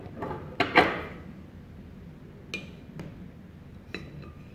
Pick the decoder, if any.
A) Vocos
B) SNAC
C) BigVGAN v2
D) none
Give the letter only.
D